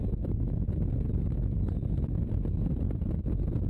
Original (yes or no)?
yes